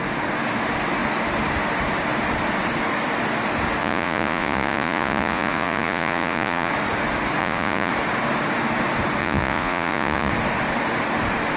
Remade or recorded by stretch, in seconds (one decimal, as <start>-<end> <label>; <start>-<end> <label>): 0.0-3.8 recorded; 3.8-6.7 remade; 6.7-7.4 recorded; 7.4-7.9 remade; 7.9-9.2 recorded; 9.2-10.3 remade; 10.3-11.6 recorded